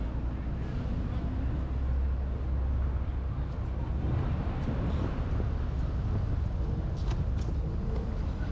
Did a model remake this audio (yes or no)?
no